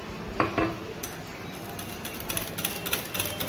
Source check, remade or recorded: recorded